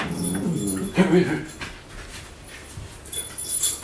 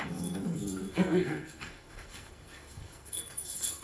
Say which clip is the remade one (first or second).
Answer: second